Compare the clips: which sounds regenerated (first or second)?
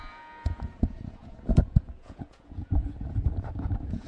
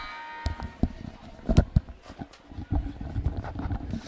first